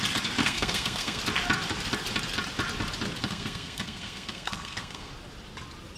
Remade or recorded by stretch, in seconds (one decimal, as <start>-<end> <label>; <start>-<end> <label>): 0.0-0.4 recorded; 0.4-1.2 remade; 1.2-3.2 recorded; 3.2-5.1 remade; 5.1-6.0 recorded